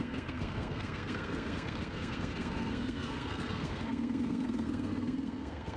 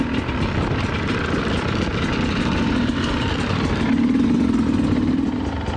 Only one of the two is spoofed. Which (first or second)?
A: first